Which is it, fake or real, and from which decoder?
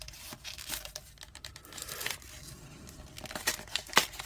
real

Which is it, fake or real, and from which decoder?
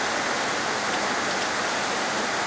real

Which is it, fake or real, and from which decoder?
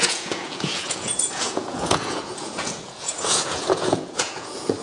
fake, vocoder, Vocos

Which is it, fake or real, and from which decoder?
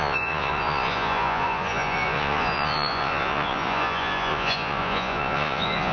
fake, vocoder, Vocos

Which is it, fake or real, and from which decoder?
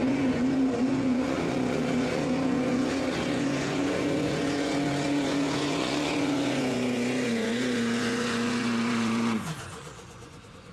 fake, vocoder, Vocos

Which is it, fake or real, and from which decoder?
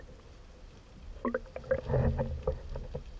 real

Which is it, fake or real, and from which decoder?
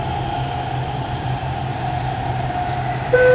real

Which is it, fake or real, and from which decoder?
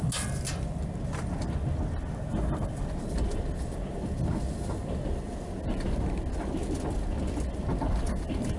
real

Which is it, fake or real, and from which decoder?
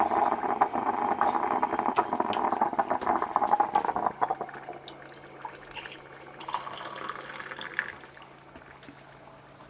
real